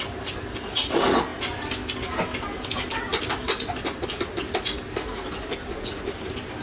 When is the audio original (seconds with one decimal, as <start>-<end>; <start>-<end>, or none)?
0.0-6.6